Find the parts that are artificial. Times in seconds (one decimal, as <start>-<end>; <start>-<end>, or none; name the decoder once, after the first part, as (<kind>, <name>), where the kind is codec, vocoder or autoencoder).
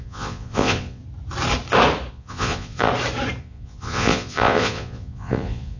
0.0-1.0 (vocoder, Vocos); 2.1-2.9; 3.4-5.8